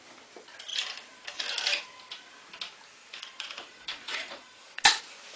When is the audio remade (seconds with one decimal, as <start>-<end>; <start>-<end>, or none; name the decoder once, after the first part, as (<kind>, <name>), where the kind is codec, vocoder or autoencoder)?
3.0-5.0 (vocoder, Vocos)